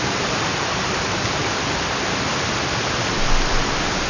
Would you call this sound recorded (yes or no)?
yes